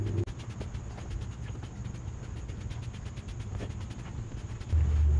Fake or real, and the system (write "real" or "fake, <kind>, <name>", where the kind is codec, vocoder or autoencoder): real